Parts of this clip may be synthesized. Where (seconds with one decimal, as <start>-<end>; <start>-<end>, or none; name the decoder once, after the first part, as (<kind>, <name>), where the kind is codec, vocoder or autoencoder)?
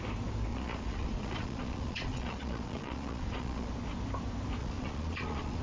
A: 0.5-3.7 (vocoder, Vocos); 4.6-5.6